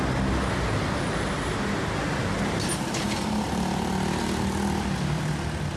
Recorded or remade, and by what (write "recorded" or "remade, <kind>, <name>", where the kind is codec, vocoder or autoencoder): recorded